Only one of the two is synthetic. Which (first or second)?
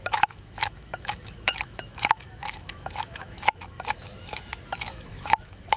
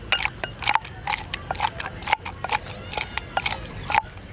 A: first